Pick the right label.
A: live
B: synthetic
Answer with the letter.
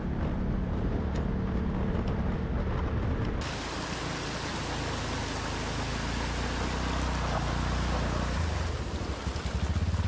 A